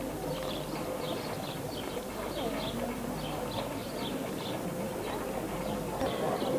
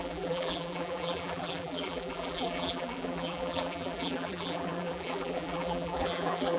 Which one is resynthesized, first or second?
second